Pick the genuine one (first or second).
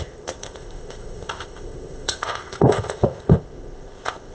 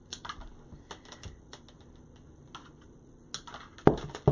second